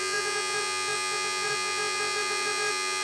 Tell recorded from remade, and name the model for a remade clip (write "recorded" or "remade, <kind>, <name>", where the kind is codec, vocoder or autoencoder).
remade, vocoder, Vocos